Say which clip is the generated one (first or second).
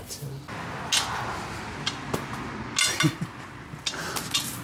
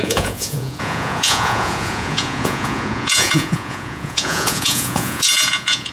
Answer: second